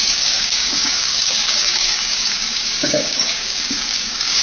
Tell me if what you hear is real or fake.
fake